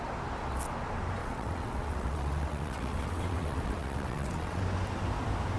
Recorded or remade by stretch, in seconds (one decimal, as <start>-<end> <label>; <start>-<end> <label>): 0.0-1.2 recorded; 1.2-4.6 remade; 4.6-5.6 recorded

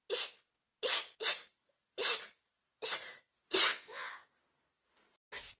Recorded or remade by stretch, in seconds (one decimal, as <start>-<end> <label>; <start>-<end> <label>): 0.0-3.7 recorded; 3.7-4.3 remade; 4.3-5.6 recorded

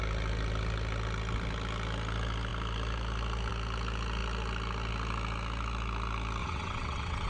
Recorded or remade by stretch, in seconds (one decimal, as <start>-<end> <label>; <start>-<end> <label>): 0.0-6.4 recorded; 6.4-7.3 remade

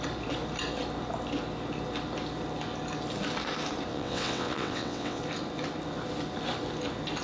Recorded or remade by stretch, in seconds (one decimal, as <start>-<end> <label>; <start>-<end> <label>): 0.0-3.9 recorded; 3.9-5.2 remade; 5.2-7.2 recorded

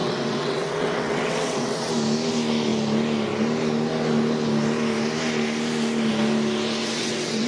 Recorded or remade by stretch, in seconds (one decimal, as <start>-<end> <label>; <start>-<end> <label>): 0.0-1.9 remade; 1.9-6.8 recorded; 6.8-7.5 remade

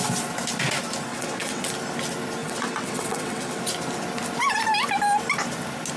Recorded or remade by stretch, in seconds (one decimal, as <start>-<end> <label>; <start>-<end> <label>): 0.0-1.1 recorded; 1.1-1.7 remade; 1.7-2.4 recorded; 2.4-3.6 remade; 3.6-6.0 recorded